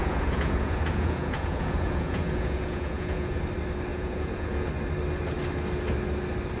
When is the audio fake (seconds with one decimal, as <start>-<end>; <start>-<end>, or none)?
0.0-3.4; 3.9-4.7